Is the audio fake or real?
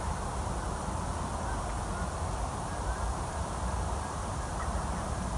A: real